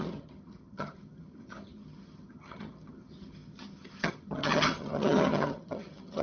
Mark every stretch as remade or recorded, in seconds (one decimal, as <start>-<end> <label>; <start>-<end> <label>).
0.0-6.2 remade